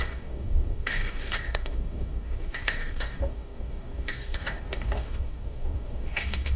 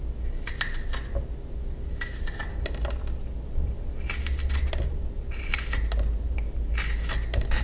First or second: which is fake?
first